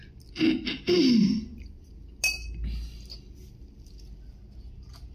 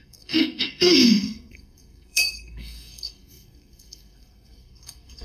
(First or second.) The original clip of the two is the first